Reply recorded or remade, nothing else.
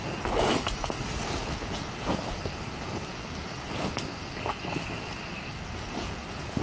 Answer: recorded